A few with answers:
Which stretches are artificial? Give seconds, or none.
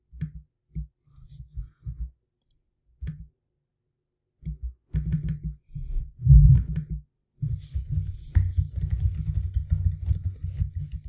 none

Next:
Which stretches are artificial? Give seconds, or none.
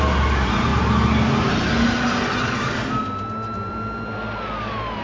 none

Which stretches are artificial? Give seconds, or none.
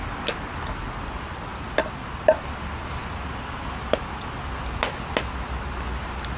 none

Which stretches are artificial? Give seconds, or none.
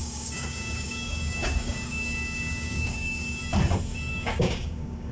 0.0-3.4 (codec, DAC); 4.1-5.1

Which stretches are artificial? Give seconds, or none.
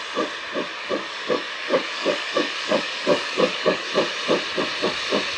0.7-3.9 (codec, DAC)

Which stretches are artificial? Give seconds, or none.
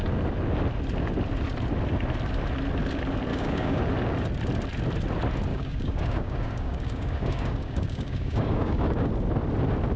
3.3-3.8 (codec, DAC); 5.5-9.1